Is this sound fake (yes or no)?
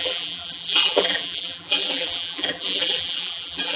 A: yes